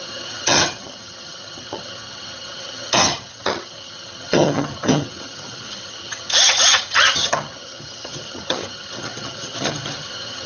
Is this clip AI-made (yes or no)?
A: yes